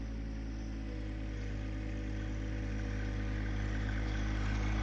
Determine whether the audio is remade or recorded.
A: recorded